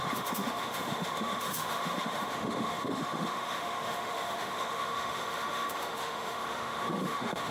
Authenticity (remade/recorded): remade